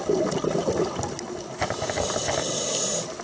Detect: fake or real real